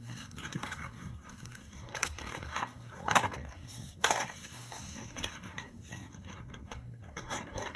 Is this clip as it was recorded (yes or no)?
no